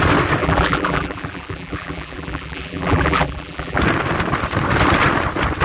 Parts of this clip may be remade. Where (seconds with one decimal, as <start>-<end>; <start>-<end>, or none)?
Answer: 0.4-3.8